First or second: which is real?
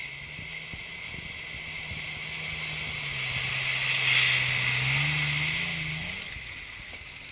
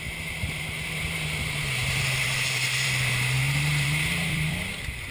first